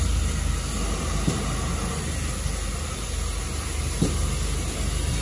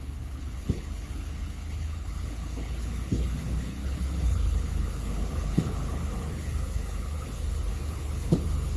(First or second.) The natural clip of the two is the first